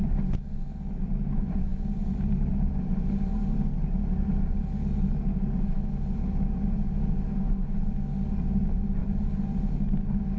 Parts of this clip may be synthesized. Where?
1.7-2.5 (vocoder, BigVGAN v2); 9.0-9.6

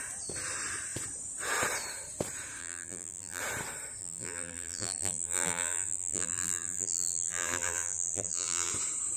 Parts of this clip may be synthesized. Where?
2.6-3.4 (vocoder, BigVGAN v2); 4.0-8.7